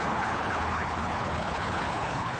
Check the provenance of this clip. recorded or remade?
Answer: remade